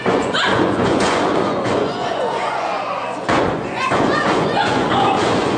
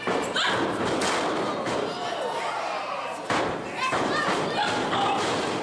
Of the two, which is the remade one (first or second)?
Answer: first